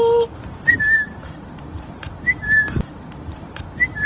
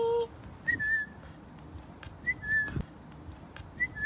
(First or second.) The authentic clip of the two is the second